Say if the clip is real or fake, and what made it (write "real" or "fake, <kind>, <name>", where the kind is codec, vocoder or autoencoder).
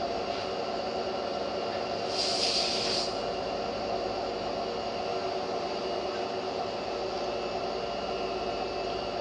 real